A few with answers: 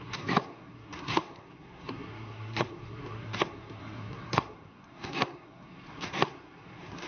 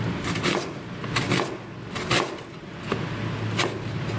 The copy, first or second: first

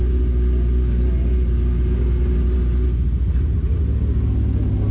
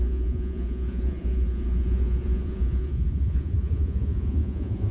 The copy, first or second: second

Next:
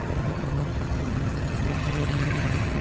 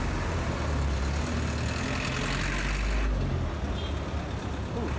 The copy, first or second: first